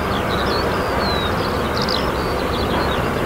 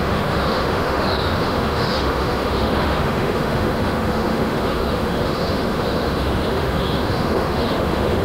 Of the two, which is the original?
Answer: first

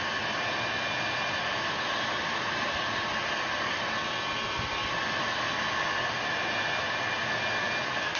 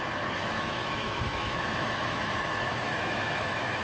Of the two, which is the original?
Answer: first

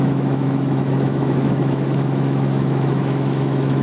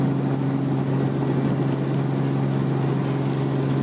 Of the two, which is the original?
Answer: second